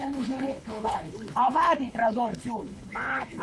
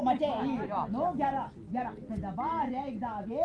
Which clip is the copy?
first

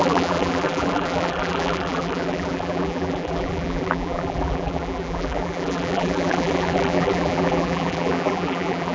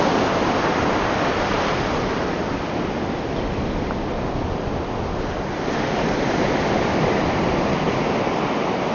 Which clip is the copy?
first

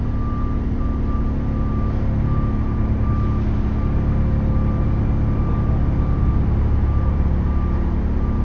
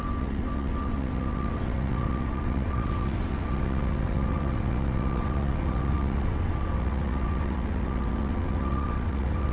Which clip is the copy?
second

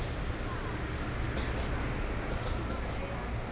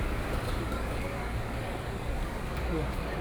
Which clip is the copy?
second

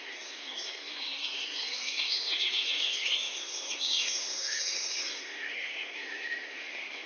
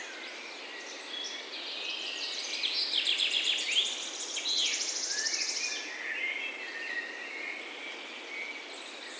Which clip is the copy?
first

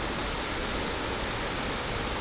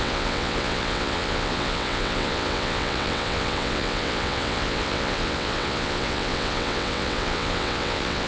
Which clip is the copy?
second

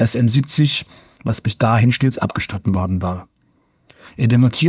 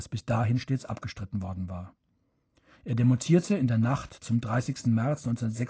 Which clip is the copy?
first